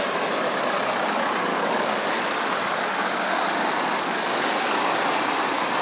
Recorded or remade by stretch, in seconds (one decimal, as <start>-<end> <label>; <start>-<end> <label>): 0.0-1.5 recorded; 1.5-5.0 remade; 5.0-5.8 recorded